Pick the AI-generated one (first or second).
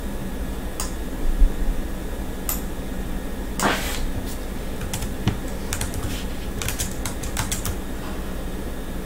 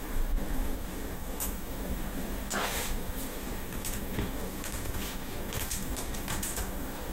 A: second